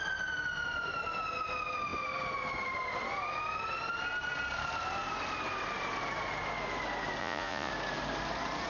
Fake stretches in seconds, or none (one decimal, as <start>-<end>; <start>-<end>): 7.2-7.7